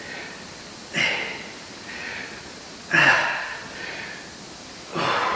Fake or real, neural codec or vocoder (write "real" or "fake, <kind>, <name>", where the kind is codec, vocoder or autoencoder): real